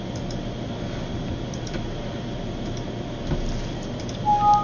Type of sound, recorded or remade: recorded